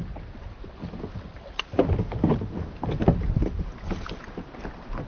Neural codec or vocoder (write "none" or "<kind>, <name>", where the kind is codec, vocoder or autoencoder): none